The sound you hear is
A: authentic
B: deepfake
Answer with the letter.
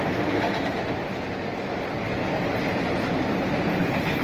A